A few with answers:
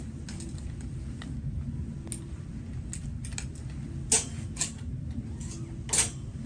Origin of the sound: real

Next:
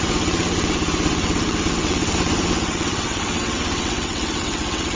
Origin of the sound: fake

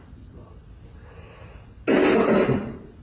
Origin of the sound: real